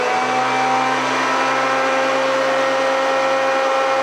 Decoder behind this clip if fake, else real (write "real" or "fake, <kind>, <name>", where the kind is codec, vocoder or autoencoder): real